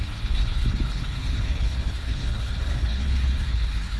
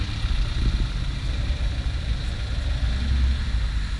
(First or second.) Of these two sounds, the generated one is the first